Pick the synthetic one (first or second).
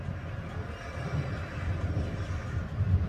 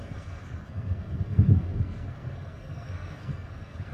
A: second